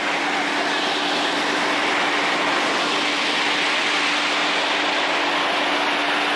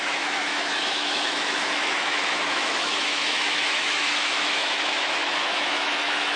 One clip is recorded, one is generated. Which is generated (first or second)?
second